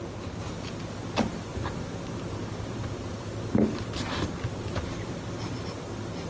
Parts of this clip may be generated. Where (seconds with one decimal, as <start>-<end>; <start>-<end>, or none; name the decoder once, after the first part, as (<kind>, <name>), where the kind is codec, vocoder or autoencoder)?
1.5-5.3 (vocoder, BigVGAN v2)